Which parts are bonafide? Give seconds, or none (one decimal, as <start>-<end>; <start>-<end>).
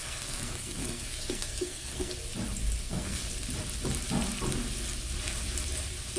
2.1-2.8; 3.2-6.2